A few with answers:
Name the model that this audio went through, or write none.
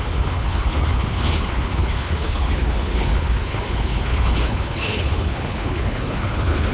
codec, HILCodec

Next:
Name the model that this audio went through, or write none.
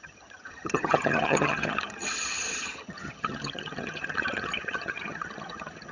vocoder, HiFi-GAN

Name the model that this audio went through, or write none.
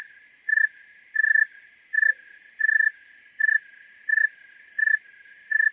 none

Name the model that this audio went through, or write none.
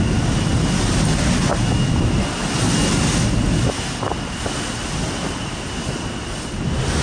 none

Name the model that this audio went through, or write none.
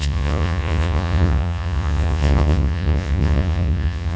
vocoder, Vocos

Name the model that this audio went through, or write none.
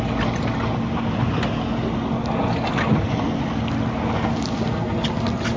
none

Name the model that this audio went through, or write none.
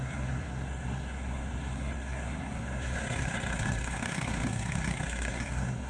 codec, SNAC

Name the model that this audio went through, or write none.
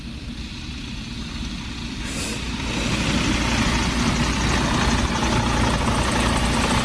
none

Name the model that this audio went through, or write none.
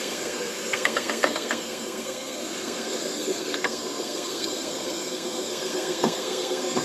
codec, SNAC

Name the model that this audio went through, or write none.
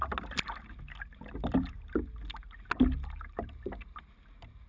none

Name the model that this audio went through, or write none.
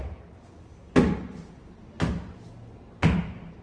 none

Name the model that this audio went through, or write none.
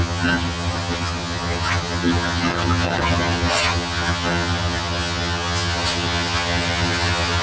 vocoder, HiFi-GAN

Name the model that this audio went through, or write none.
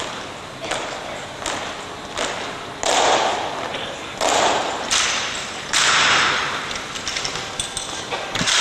none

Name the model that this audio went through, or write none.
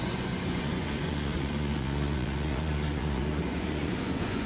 vocoder, Vocos